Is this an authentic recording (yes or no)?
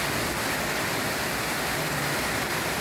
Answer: yes